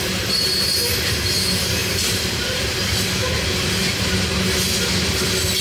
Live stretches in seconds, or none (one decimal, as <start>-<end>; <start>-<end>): 0.0-1.8; 2.4-5.6